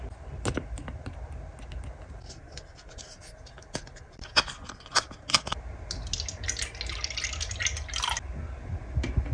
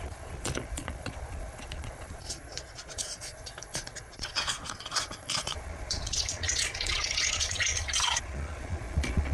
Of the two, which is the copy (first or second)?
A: second